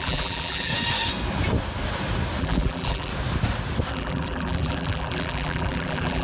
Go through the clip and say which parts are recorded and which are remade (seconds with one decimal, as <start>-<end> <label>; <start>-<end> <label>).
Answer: 0.0-0.7 remade; 0.7-2.4 recorded; 2.4-3.1 remade; 3.1-3.9 recorded; 3.9-6.2 remade